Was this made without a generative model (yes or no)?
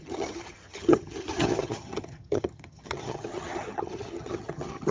no